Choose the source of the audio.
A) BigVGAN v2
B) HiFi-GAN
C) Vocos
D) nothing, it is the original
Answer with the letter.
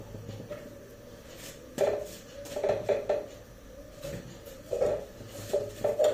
D